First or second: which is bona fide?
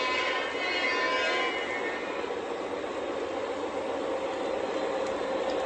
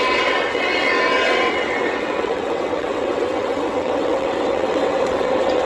first